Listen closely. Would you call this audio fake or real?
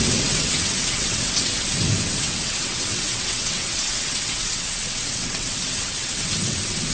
fake